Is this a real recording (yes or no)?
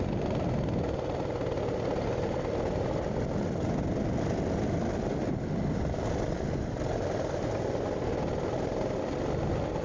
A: yes